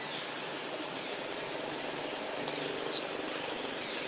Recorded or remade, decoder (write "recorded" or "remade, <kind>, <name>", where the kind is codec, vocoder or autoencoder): recorded